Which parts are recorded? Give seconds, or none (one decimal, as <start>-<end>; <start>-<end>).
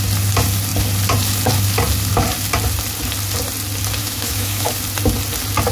0.0-4.0; 4.7-5.7